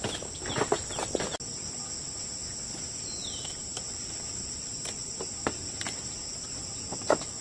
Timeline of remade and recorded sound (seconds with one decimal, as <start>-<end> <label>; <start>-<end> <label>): 0.0-7.4 recorded

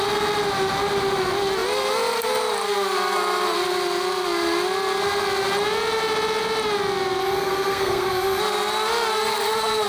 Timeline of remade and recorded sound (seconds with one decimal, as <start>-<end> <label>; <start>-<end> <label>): 0.0-7.2 recorded; 7.2-8.4 remade; 8.4-9.9 recorded

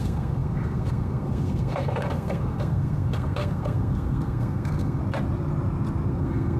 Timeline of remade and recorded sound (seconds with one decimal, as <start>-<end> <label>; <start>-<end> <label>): 0.0-5.0 remade; 5.0-6.1 recorded; 6.1-6.6 remade